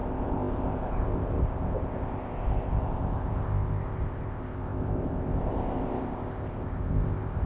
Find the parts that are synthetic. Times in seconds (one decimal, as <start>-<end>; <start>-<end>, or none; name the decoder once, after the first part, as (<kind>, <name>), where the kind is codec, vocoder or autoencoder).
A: 0.0-7.5 (codec, ZipCodec)